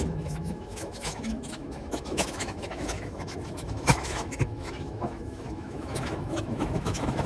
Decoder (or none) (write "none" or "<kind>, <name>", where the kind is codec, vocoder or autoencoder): autoencoder, DAC-VAE